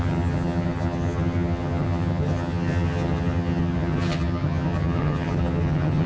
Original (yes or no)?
no